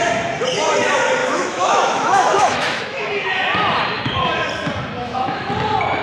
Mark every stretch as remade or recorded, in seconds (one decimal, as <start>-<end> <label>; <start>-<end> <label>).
0.0-1.2 recorded; 1.2-3.1 remade; 3.1-5.0 recorded; 5.0-5.5 remade; 5.5-6.0 recorded